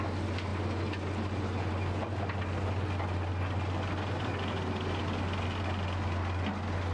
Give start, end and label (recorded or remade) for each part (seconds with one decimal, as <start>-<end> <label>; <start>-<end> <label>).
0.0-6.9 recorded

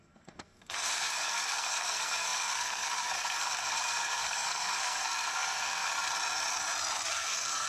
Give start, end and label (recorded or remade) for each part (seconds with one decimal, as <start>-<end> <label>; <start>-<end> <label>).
0.0-5.9 remade; 5.9-7.1 recorded; 7.1-7.7 remade

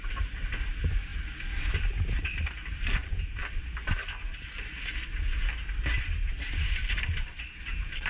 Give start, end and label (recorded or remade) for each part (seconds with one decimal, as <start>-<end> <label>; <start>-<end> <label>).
0.0-3.4 remade; 3.4-7.6 recorded; 7.6-8.1 remade